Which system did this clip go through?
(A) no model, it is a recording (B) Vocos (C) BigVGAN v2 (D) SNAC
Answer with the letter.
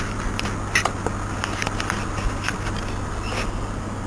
A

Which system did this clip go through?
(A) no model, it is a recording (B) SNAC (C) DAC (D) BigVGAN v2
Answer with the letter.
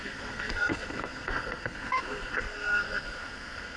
B